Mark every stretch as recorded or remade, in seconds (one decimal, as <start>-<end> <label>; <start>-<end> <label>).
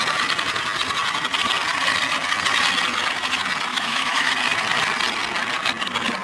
0.0-3.7 recorded; 3.7-4.3 remade; 4.3-6.2 recorded